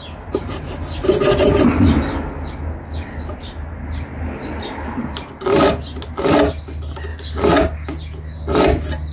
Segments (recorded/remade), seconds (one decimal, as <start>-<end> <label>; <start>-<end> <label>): 0.0-9.1 recorded